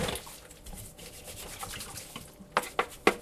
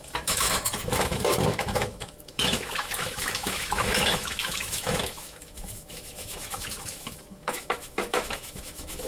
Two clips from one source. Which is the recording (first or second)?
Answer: first